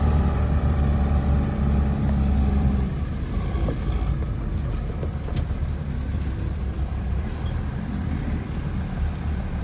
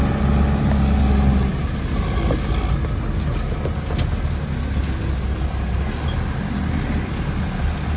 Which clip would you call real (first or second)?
second